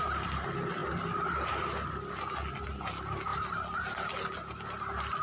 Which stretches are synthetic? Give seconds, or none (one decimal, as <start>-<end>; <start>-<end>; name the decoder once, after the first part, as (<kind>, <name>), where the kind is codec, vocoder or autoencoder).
none